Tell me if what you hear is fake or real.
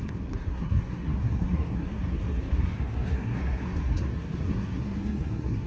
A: fake